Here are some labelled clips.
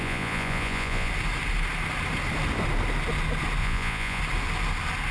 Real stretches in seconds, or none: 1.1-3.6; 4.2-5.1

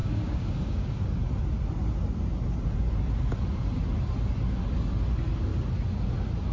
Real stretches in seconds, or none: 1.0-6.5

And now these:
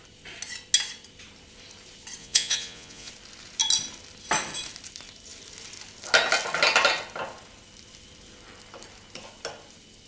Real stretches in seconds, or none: 0.0-2.2; 3.1-10.1

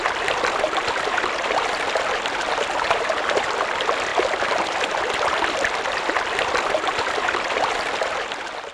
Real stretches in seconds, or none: none

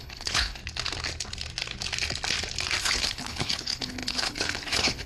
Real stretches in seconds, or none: 0.6-2.8

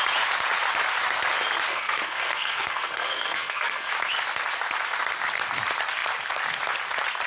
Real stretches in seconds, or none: 0.0-1.7; 3.9-7.3